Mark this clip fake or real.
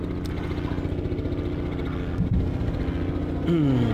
real